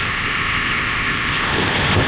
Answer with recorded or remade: remade